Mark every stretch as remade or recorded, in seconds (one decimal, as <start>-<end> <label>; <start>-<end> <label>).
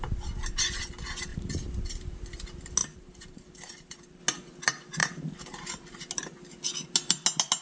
0.0-1.3 recorded; 1.3-2.1 remade; 2.1-2.8 recorded; 2.8-4.2 remade; 4.2-5.0 recorded; 5.0-6.0 remade; 6.0-7.6 recorded